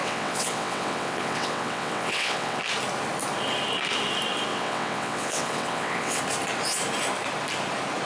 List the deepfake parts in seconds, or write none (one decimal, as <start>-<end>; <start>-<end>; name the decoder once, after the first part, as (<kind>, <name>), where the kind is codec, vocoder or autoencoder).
0.0-2.6 (vocoder, WaveNeXt); 4.5-6.2